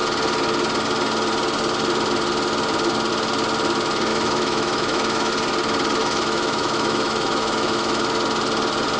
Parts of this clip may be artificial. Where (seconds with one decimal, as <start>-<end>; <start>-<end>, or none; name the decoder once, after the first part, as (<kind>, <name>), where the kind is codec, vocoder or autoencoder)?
4.1-5.3 (autoencoder, DAC-VAE); 6.0-8.0